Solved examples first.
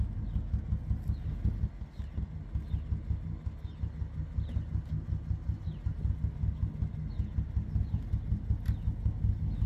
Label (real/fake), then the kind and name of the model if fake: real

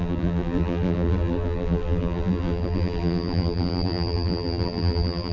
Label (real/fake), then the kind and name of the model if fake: fake, vocoder, BigVGAN v2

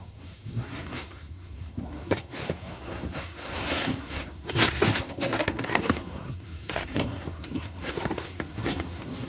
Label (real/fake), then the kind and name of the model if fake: fake, codec, SNAC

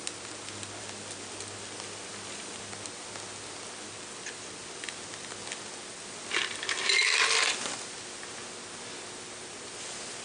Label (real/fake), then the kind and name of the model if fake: real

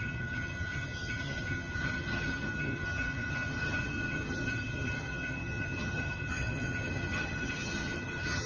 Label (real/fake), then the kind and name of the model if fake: fake, vocoder, HiFi-GAN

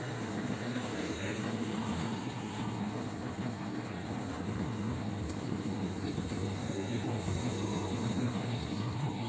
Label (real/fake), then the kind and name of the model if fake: fake, codec, SNAC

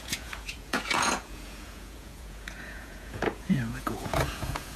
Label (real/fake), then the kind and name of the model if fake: fake, vocoder, Vocos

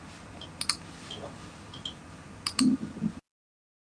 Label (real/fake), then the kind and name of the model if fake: real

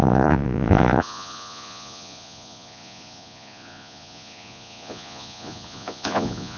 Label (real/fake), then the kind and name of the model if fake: fake, vocoder, Vocos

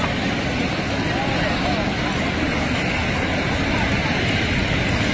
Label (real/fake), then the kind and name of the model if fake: real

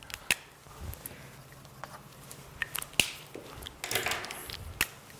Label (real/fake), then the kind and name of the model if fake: real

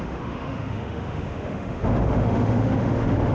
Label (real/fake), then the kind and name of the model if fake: fake, autoencoder, DAC-VAE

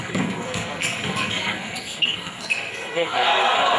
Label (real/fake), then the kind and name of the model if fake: fake, codec, SNAC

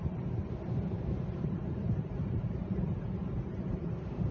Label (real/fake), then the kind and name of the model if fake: fake, vocoder, BigVGAN v2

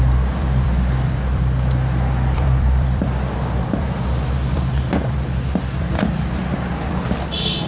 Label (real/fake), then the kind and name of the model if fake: fake, vocoder, BigVGAN v2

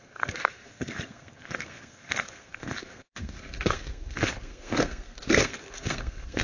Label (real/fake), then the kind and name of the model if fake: fake, codec, SNAC